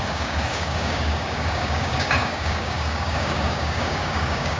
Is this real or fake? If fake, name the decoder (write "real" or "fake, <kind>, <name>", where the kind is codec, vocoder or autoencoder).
fake, codec, DAC